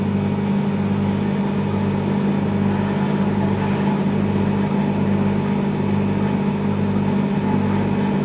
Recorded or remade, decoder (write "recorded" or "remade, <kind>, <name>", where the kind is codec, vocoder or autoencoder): recorded